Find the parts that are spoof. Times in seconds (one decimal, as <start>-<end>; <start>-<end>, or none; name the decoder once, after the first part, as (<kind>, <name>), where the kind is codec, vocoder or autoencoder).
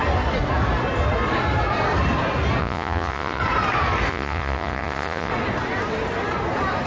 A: 2.6-3.4 (vocoder, Vocos); 4.1-5.3